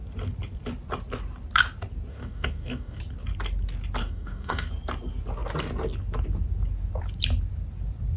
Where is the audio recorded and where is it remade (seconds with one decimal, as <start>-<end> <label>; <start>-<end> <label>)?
0.0-2.1 recorded; 2.1-3.0 remade; 3.0-4.0 recorded; 4.0-4.7 remade; 4.7-8.2 recorded